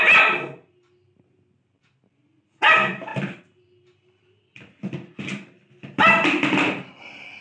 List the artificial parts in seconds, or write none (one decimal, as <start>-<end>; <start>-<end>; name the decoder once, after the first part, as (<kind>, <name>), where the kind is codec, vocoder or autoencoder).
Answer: none